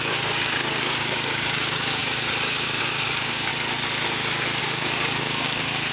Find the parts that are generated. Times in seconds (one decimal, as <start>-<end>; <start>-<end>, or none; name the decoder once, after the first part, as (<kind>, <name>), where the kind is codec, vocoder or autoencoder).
0.0-3.5 (codec, DAC); 4.6-5.9